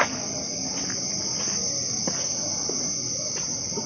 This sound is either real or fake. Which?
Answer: real